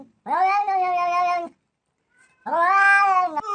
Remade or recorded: recorded